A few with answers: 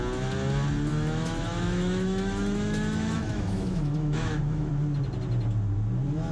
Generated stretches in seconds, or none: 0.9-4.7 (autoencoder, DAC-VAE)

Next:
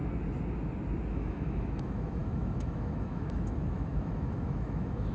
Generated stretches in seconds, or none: 1.1-5.1 (autoencoder, DAC-VAE)

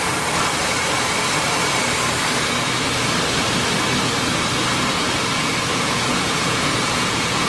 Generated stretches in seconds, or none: 5.7-7.5 (vocoder, Vocos)

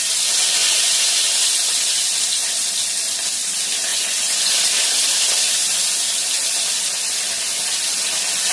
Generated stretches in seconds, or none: 0.6-1.3 (vocoder, Vocos); 3.9-4.6

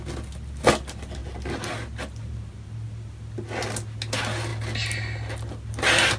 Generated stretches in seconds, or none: none

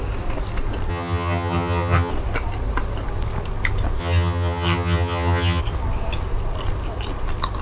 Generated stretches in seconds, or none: 0.9-2.1 (vocoder, HiFi-GAN); 4.0-5.6

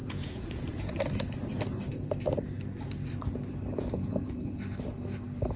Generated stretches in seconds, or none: 0.0-0.6 (vocoder, Vocos); 3.7-4.3